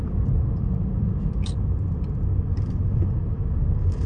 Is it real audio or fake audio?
fake